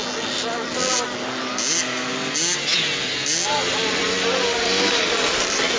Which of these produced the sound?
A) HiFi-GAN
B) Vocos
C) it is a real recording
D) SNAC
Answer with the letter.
C